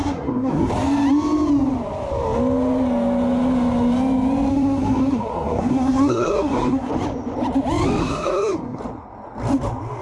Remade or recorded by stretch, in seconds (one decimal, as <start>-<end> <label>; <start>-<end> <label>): 0.0-0.7 remade; 0.7-4.5 recorded; 4.5-6.9 remade; 6.9-8.0 recorded; 8.0-8.8 remade; 8.8-10.0 recorded